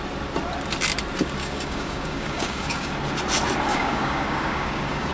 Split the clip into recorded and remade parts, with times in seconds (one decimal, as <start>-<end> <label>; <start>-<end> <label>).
0.0-1.4 recorded; 1.4-2.9 remade; 2.9-3.7 recorded; 3.7-5.1 remade